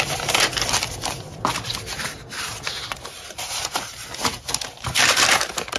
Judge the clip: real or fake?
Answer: fake